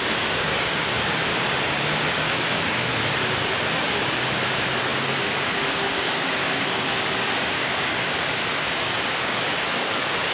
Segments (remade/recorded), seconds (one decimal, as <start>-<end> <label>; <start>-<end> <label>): 0.0-1.3 remade; 1.3-2.1 recorded; 2.1-2.9 remade; 2.9-3.7 recorded; 3.7-10.3 remade